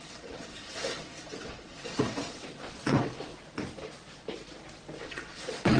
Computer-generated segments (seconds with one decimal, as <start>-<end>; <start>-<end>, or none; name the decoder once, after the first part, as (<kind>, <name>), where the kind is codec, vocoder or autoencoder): 0.0-3.3 (vocoder, WaveNeXt); 5.0-5.8